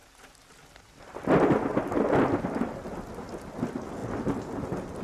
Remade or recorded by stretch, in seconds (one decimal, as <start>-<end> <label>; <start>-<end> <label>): 0.0-5.0 recorded